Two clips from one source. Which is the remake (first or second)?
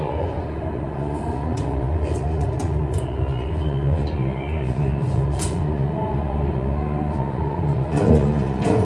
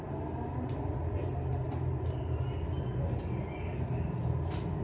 first